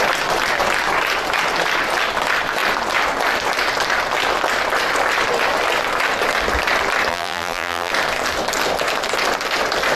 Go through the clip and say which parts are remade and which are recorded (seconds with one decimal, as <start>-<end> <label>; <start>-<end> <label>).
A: 0.0-7.1 recorded; 7.1-7.9 remade; 7.9-10.0 recorded